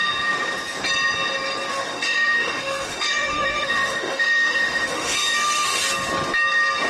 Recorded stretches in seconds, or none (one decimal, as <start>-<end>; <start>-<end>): 0.0-1.7; 5.8-6.9